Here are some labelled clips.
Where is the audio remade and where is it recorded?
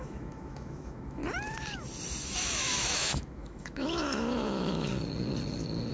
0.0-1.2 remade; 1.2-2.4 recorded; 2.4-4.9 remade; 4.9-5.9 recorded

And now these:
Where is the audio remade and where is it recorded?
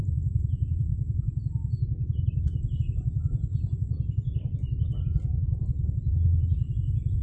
0.0-7.2 recorded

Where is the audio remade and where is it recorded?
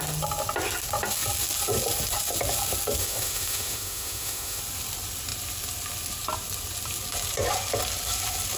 0.0-3.0 recorded; 3.0-4.6 remade; 4.6-8.6 recorded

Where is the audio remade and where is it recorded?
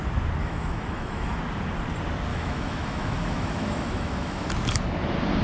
0.0-0.4 recorded; 0.4-1.4 remade; 1.4-2.3 recorded; 2.3-4.5 remade; 4.5-5.4 recorded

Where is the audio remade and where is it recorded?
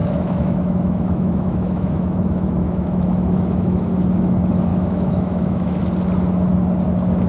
0.0-4.0 remade; 4.0-4.7 recorded; 4.7-5.8 remade; 5.8-7.3 recorded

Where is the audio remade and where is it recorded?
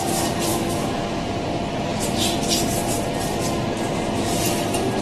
0.0-0.5 recorded; 0.5-1.3 remade; 1.3-5.0 recorded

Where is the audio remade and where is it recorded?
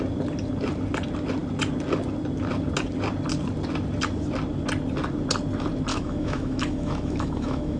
0.0-5.9 recorded; 5.9-7.8 remade